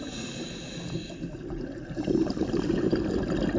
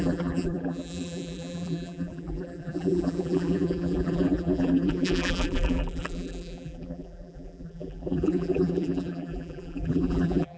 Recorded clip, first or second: first